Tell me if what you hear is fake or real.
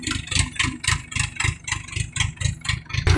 real